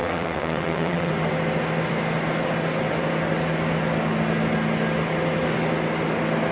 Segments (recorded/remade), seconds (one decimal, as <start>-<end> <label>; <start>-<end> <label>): 0.0-1.1 remade; 1.1-6.5 recorded